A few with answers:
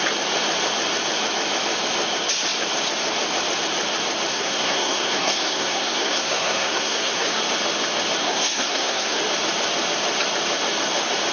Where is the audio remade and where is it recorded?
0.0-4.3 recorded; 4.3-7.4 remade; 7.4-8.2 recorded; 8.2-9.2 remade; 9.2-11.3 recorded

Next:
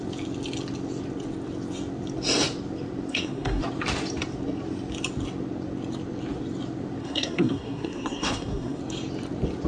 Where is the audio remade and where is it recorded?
0.0-3.1 recorded; 3.1-3.6 remade; 3.6-7.0 recorded; 7.0-8.8 remade; 8.8-9.7 recorded

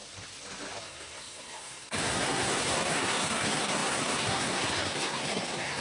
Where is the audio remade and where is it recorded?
0.0-0.8 recorded; 0.8-5.8 remade

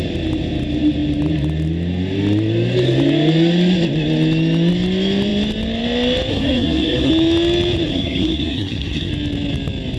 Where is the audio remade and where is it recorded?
0.0-6.3 recorded; 6.3-7.1 remade; 7.1-7.9 recorded; 7.9-9.1 remade; 9.1-10.0 recorded

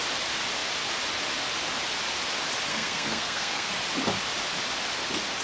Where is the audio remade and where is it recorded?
0.0-2.7 recorded; 2.7-3.7 remade; 3.7-5.4 recorded